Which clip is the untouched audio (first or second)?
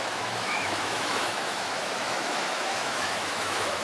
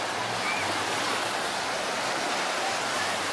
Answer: second